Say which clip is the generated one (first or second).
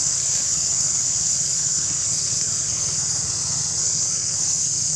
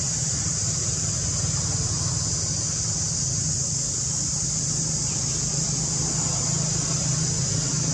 first